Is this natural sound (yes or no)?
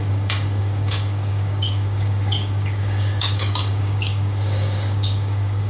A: no